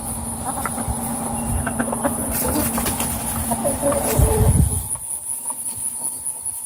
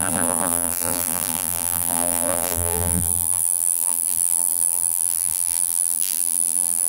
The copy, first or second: second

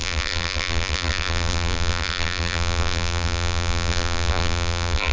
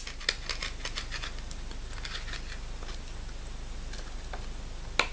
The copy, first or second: first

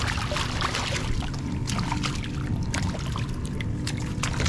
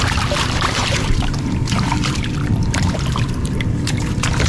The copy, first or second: second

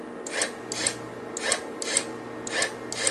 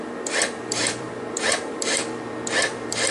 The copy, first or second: second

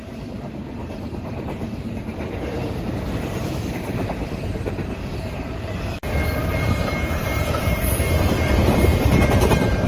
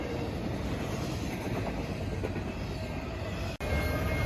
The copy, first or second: first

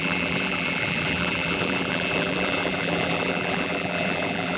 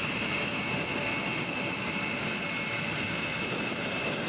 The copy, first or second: first